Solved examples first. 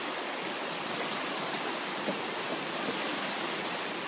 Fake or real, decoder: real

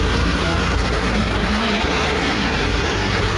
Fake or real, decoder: fake, codec, SNAC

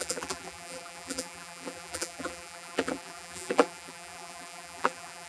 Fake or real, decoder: fake, vocoder, BigVGAN v2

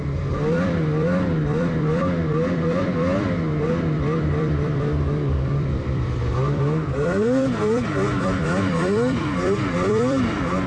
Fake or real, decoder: fake, vocoder, BigVGAN v2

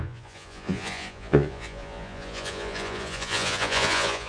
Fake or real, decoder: fake, vocoder, Vocos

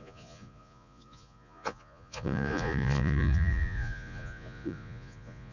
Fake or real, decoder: fake, vocoder, Vocos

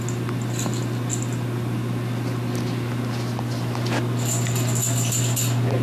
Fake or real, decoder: real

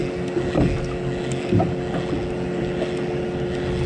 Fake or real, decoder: real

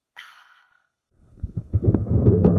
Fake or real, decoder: fake, codec, SNAC